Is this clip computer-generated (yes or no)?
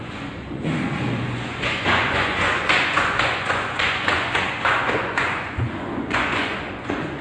yes